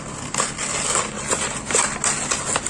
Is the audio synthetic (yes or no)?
no